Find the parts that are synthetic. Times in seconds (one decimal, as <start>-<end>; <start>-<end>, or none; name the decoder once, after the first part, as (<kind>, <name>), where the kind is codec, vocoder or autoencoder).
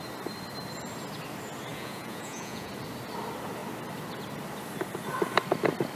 1.7-2.7 (vocoder, Vocos)